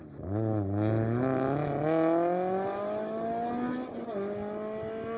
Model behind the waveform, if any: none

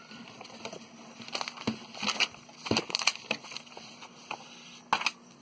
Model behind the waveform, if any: none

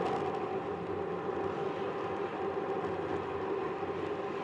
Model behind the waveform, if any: none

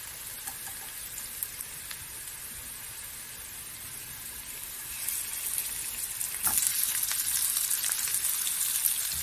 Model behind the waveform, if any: none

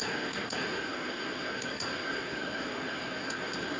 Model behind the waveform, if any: codec, SNAC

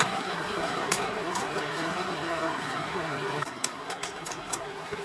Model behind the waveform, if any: codec, SNAC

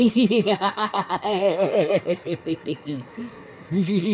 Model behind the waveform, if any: codec, SNAC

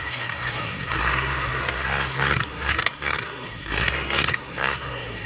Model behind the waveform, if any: codec, SNAC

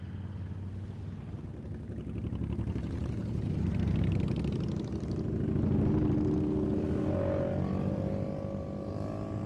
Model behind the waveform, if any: none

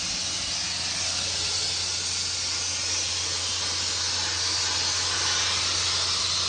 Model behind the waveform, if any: none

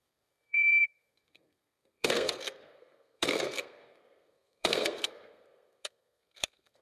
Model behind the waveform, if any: codec, SNAC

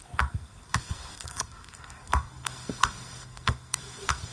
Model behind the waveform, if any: codec, SNAC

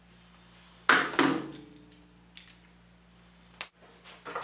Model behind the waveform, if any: none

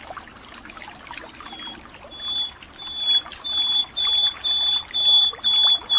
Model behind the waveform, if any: none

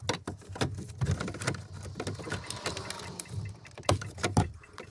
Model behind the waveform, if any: none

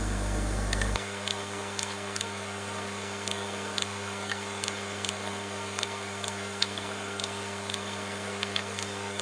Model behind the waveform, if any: codec, SNAC